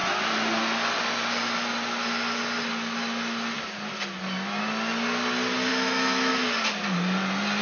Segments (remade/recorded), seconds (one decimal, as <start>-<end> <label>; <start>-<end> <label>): 0.0-5.7 recorded; 5.7-6.3 remade; 6.3-7.6 recorded